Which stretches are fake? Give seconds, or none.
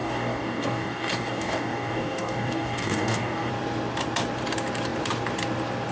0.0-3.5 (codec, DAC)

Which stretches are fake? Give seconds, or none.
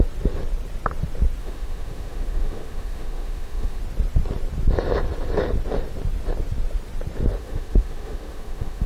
1.4-3.8 (autoencoder, DAC-VAE); 7.4-8.9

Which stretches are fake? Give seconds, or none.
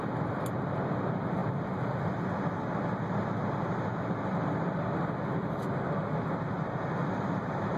none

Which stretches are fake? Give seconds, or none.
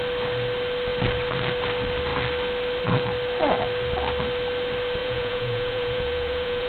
5.0-6.7 (vocoder, Vocos)